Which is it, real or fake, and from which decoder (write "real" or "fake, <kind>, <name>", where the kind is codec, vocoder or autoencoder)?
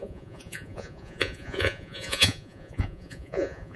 fake, vocoder, Vocos